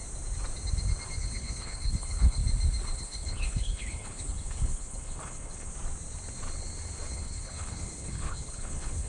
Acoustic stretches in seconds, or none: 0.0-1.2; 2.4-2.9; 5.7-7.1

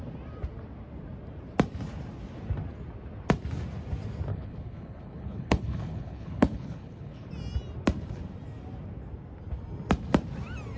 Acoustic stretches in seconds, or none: 0.0-4.3; 7.3-10.8

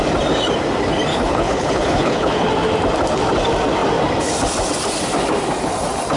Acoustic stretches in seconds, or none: 0.0-1.1; 2.5-6.2

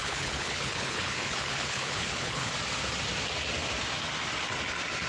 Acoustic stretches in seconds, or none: 2.5-5.1

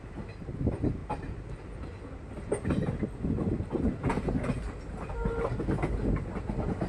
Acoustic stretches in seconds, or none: 0.0-6.9

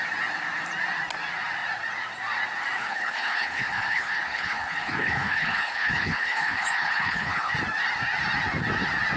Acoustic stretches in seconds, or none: 0.0-2.8; 7.5-9.2

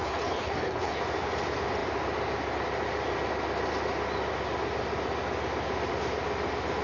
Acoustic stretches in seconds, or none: 1.0-6.8